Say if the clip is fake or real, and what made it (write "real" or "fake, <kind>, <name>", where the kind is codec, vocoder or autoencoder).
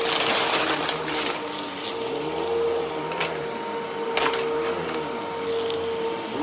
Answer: real